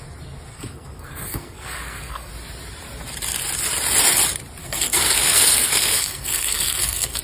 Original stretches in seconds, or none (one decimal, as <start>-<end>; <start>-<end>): 0.0-0.5; 2.3-4.6